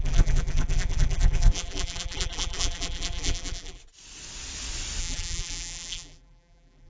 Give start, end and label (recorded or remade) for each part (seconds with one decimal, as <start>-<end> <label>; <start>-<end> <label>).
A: 0.0-3.8 remade; 3.8-5.0 recorded; 5.0-6.9 remade